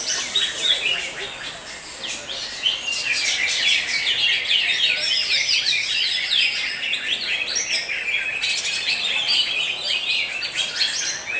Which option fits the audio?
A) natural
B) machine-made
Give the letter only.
A